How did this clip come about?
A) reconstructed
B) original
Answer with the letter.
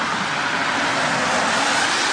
B